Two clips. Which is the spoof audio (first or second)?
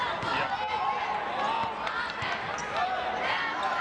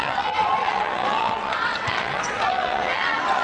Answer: second